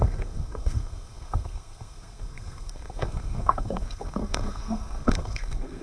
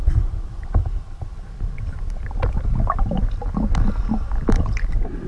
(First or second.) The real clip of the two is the second